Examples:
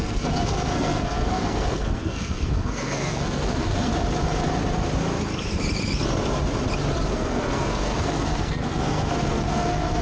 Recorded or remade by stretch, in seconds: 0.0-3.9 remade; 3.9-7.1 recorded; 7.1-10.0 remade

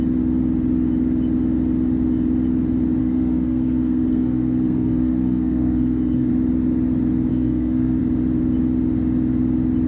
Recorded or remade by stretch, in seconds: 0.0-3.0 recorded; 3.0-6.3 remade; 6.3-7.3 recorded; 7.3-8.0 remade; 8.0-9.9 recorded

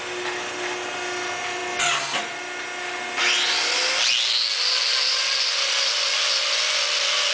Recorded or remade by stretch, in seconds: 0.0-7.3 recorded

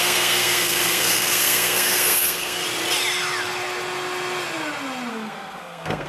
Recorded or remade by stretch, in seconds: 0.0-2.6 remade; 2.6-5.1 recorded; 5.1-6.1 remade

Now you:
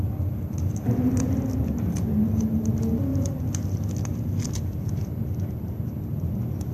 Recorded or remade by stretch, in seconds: 0.0-6.7 recorded

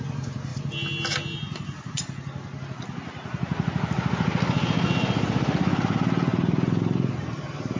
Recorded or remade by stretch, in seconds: 0.0-7.8 recorded